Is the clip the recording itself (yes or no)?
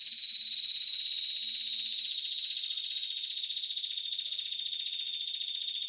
yes